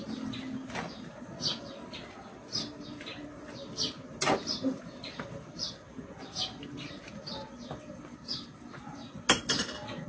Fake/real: real